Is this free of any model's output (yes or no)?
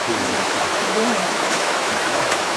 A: no